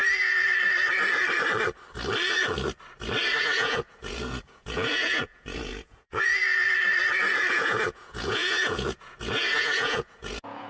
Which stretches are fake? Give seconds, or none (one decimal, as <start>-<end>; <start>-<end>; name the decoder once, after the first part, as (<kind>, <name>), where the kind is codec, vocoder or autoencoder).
3.4-6.3 (vocoder, Vocos); 7.5-10.7